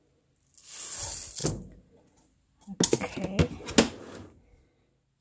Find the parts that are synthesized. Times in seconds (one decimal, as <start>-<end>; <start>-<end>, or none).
none